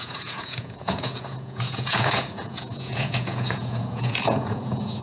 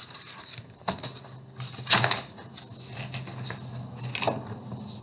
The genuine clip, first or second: second